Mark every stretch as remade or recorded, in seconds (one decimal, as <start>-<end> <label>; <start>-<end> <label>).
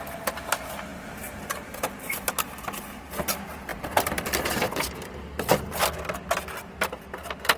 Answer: 0.0-7.6 recorded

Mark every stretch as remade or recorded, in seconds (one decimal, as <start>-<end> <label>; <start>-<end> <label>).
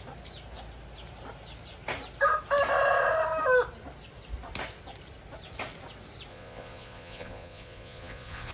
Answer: 0.0-6.3 recorded; 6.3-8.5 remade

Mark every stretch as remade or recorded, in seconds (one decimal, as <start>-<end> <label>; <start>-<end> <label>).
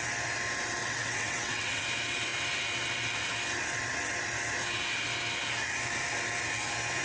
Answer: 0.0-0.8 recorded; 0.8-1.8 remade; 1.8-7.0 recorded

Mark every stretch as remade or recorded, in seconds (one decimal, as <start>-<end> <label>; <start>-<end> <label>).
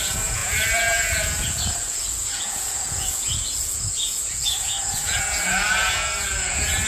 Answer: 0.0-6.9 remade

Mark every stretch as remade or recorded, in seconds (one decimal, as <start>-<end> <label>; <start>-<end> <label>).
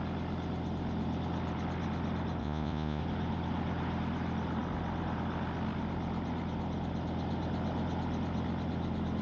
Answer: 0.0-2.4 recorded; 2.4-3.0 remade; 3.0-9.2 recorded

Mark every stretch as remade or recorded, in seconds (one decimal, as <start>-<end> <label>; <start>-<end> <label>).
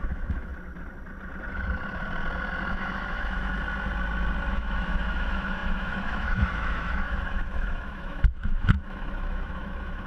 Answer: 0.0-0.5 remade; 0.5-2.7 recorded; 2.7-3.5 remade; 3.5-4.5 recorded; 4.5-10.1 remade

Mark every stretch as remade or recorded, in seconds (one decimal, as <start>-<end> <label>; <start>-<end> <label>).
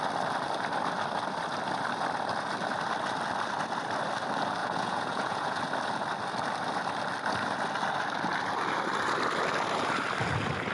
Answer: 0.0-4.6 recorded; 4.6-5.6 remade; 5.6-10.7 recorded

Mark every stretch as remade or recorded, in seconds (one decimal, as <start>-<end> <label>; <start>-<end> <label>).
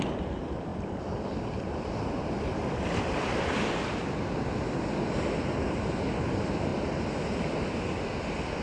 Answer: 0.0-8.6 recorded